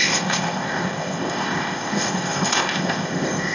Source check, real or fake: fake